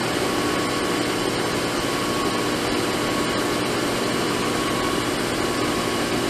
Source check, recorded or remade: recorded